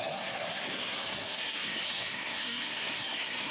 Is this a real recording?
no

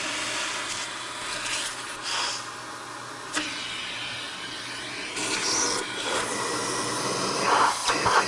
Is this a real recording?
yes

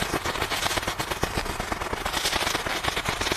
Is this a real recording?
yes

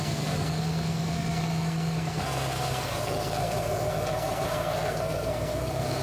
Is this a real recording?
no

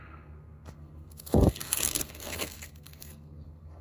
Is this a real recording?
no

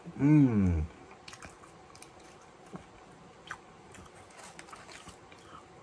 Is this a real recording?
yes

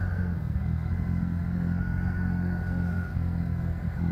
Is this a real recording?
no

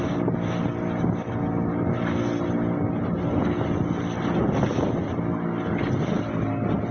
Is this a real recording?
yes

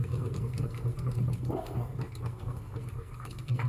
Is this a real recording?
no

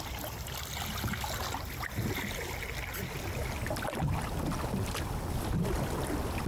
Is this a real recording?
yes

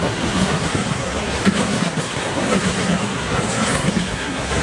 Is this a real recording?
no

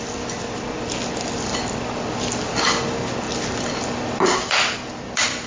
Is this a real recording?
yes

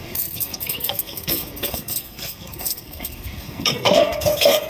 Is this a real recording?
no